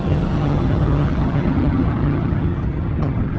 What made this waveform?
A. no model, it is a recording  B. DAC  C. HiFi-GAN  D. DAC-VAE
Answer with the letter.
C